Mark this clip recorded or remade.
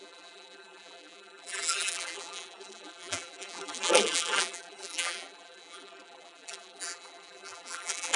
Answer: remade